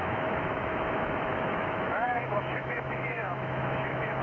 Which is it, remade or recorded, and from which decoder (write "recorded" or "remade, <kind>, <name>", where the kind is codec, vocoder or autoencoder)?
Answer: remade, autoencoder, DAC-VAE